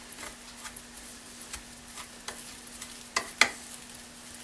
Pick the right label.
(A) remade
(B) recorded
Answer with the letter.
B